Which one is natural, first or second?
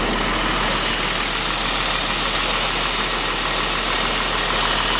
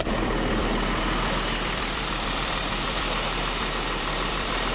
first